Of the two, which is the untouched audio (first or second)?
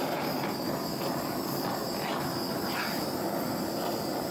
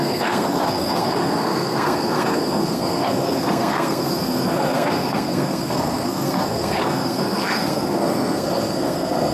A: first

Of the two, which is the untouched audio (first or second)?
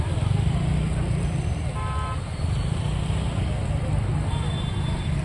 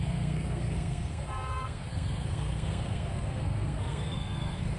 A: first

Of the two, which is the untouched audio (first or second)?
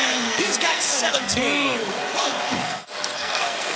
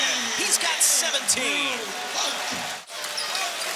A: second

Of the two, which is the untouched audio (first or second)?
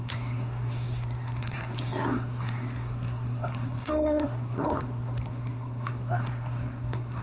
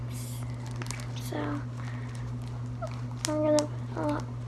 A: second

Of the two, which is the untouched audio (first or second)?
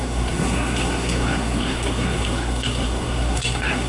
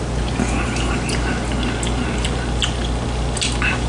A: second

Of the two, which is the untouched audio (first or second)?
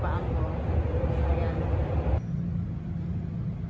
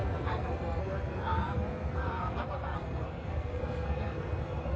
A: first